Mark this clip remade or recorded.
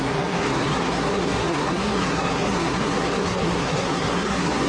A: remade